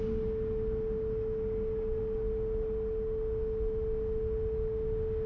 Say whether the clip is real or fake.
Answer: real